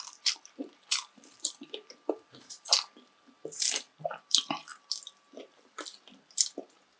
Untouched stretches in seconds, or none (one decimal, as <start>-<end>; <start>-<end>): 4.7-5.2